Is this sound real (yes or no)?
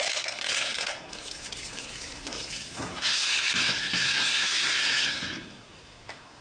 no